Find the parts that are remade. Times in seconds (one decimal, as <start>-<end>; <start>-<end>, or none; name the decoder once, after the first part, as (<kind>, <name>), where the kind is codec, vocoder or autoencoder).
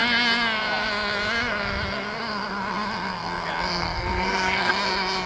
3.7-4.7 (codec, SNAC)